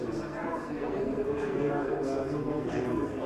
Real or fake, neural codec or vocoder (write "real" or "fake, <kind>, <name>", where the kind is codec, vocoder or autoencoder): fake, codec, SNAC